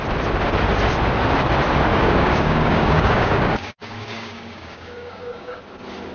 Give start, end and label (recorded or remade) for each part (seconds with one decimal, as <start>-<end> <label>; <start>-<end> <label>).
0.0-1.9 recorded; 1.9-5.6 remade; 5.6-6.1 recorded